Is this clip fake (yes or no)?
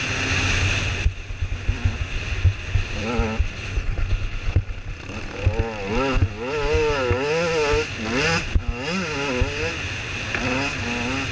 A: no